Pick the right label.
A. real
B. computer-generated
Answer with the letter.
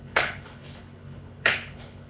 B